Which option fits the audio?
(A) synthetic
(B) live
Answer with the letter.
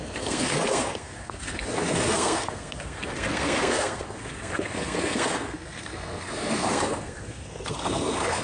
A